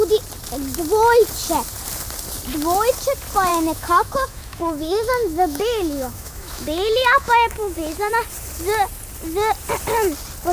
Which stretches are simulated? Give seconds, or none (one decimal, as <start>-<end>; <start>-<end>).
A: 3.5-8.1